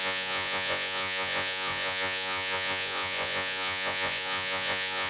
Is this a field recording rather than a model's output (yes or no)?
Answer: no